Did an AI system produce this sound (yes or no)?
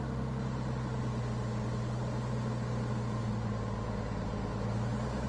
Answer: no